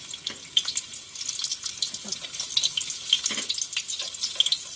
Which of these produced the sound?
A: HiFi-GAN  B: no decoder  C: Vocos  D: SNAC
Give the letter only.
B